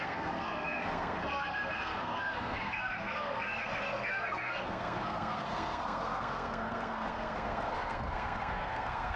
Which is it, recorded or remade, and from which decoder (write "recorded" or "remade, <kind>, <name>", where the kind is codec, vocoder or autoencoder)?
remade, codec, SNAC